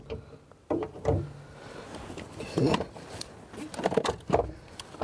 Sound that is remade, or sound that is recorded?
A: recorded